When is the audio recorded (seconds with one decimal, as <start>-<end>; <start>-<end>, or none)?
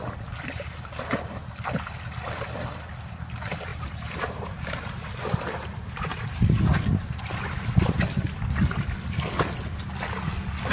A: 0.0-3.7; 7.4-10.7